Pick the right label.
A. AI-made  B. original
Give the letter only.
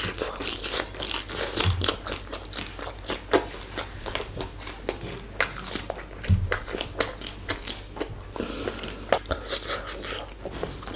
B